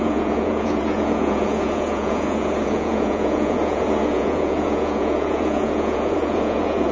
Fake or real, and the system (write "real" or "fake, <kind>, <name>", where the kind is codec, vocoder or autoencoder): fake, vocoder, Vocos